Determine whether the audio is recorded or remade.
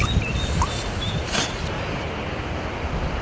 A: recorded